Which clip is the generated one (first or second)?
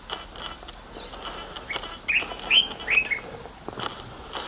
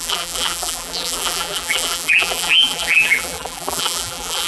second